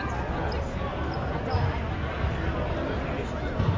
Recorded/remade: recorded